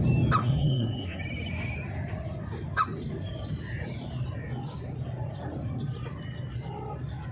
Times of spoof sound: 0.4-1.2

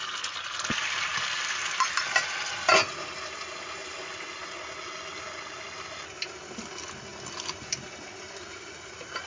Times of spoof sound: none

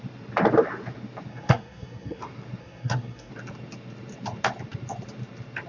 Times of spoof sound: 1.3-2.2; 2.6-3.3

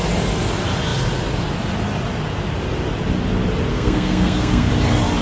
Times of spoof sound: 3.7-4.7

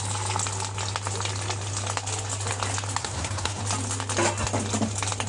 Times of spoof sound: 3.0-3.6

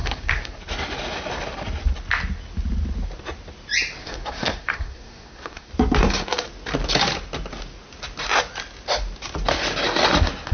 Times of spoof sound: 0.0-0.6; 4.0-5.7